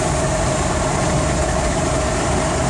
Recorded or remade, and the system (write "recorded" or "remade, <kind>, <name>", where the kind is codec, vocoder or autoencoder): recorded